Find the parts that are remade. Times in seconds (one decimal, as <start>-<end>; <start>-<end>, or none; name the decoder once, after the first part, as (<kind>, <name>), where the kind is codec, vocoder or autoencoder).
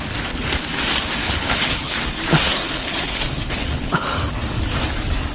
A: 1.2-2.2 (codec, HILCodec); 2.6-4.3